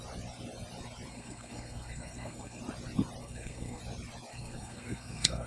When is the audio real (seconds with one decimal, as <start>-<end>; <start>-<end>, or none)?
0.0-1.1; 2.6-3.2; 3.8-4.3